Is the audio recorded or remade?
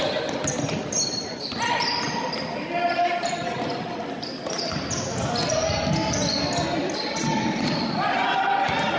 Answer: recorded